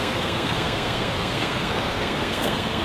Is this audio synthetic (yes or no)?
yes